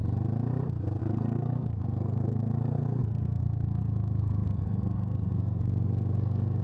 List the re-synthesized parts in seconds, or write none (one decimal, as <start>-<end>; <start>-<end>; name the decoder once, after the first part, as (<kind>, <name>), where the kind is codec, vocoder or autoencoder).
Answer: 1.0-6.6 (codec, SNAC)